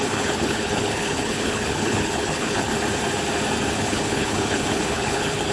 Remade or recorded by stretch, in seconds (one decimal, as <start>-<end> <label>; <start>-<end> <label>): 0.0-2.7 remade; 2.7-3.7 recorded; 3.7-5.5 remade